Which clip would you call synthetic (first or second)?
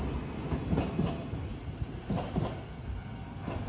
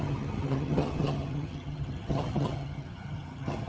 second